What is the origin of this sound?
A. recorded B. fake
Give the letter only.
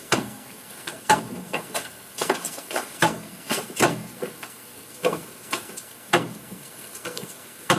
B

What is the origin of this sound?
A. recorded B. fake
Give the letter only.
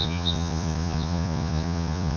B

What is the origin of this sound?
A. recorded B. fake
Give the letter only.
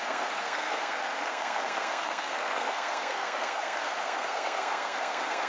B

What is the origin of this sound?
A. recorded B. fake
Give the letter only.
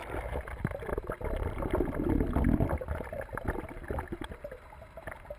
A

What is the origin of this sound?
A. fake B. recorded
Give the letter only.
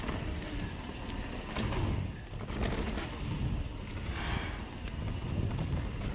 B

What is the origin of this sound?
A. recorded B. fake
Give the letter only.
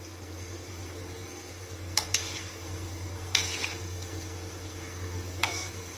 B